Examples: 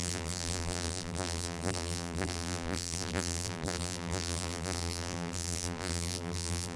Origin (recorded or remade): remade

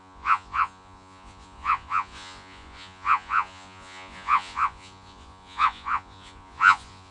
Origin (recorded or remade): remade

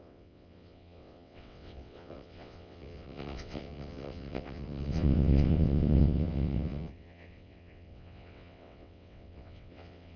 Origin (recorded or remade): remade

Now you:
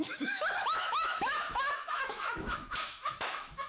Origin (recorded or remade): remade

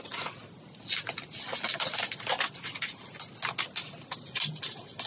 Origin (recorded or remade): recorded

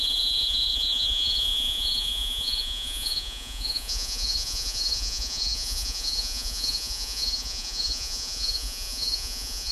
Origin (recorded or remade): remade